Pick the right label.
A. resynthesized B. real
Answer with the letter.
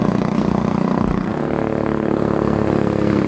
A